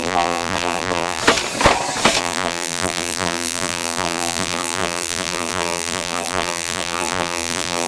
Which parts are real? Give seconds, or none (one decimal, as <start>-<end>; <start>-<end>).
1.2-2.2

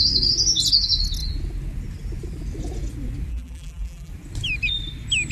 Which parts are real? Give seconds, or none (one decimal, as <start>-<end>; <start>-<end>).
0.0-3.3; 4.1-5.3

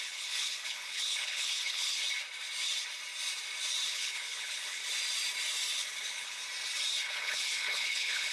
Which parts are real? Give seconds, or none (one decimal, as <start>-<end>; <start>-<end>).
2.0-3.9; 4.8-5.8; 6.4-7.1

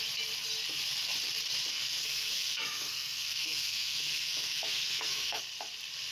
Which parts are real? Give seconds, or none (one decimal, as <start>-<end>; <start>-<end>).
0.0-1.7; 5.4-6.1

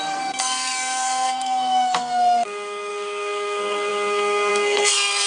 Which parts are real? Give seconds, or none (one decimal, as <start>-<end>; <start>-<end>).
none